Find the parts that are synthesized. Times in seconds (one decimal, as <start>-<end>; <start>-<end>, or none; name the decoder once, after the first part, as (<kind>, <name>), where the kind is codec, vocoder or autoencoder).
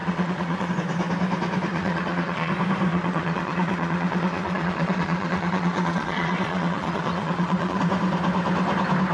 0.0-0.7 (vocoder, Vocos); 1.7-2.5; 2.9-7.8